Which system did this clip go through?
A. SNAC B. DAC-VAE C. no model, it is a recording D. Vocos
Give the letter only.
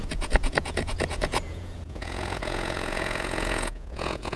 D